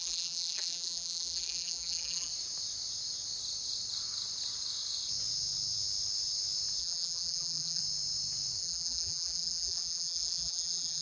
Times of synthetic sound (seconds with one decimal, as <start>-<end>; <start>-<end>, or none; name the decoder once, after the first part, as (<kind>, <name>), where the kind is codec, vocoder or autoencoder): 0.0-2.3 (vocoder, BigVGAN v2); 6.8-7.8; 8.6-11.0